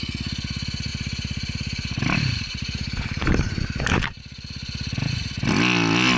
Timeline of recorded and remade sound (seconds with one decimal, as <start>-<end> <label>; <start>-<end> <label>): 0.0-0.9 recorded; 0.9-4.2 remade; 4.2-6.2 recorded